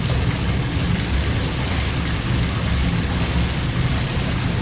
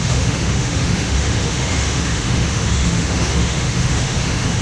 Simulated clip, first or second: second